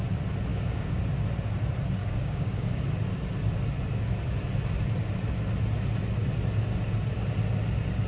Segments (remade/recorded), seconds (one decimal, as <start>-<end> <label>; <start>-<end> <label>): 0.0-0.5 recorded; 0.5-1.0 remade; 1.0-2.0 recorded; 2.0-2.8 remade; 2.8-8.1 recorded